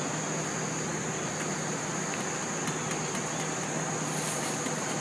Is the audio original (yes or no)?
yes